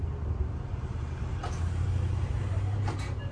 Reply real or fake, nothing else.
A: fake